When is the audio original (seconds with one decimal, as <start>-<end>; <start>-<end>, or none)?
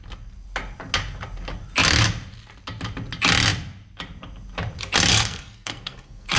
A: 0.0-5.1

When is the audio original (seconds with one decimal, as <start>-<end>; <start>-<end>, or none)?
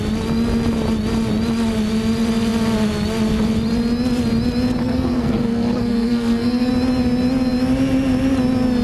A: 0.0-4.8; 6.7-8.8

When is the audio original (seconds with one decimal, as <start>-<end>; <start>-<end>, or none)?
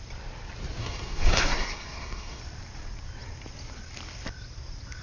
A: 0.0-0.8; 2.4-5.0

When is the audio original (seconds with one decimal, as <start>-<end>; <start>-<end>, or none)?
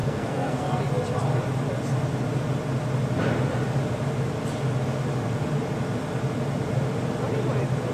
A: 0.8-7.9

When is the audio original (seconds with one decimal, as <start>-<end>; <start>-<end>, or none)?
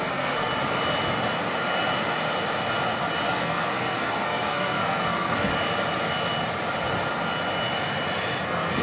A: 0.5-3.4; 5.5-8.4